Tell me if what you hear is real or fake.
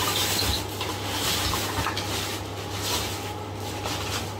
real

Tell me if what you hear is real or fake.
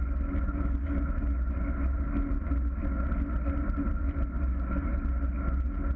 real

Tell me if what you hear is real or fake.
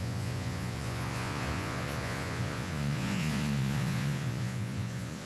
fake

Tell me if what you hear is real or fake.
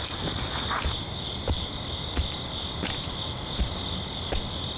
real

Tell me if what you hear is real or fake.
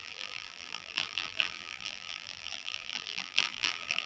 fake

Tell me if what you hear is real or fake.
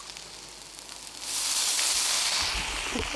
real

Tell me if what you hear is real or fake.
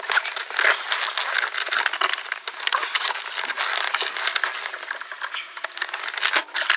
real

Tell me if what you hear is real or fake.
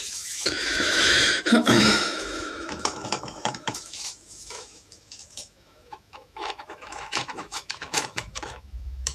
fake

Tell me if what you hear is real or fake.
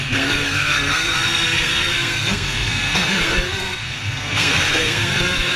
fake